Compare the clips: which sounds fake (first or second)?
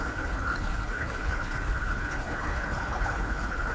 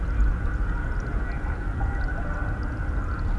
first